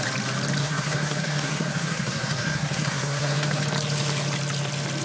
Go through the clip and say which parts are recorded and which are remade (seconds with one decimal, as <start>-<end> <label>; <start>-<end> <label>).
0.0-0.6 recorded; 0.6-3.6 remade; 3.6-5.0 recorded